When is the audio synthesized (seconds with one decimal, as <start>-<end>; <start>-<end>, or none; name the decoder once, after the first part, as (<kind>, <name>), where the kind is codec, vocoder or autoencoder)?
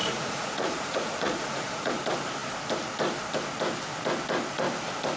0.0-1.9 (vocoder, Vocos)